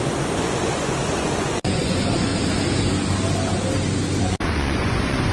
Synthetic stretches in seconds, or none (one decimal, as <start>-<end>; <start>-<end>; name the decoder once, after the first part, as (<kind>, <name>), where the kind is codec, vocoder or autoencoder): 0.0-2.3 (vocoder, Vocos); 4.2-5.3